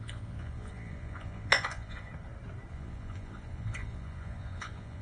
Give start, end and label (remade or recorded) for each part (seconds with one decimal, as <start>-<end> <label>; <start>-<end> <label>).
0.0-2.1 remade; 2.1-2.7 recorded; 2.7-5.0 remade